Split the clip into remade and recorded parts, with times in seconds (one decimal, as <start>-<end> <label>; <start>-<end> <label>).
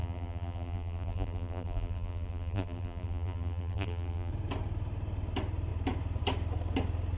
0.0-4.3 remade; 4.3-7.2 recorded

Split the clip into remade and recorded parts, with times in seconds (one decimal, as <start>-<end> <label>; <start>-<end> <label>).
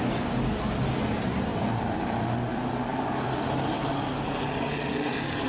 0.0-1.5 recorded; 1.5-2.5 remade; 2.5-2.9 recorded; 2.9-3.9 remade; 3.9-5.5 recorded